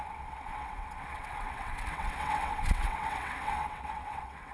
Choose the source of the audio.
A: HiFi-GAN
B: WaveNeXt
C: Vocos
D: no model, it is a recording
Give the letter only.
B